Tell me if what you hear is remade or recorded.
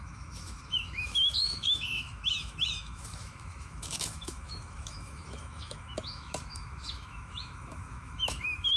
remade